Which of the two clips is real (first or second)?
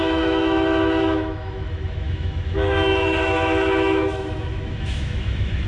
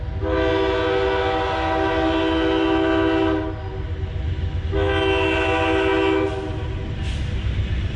second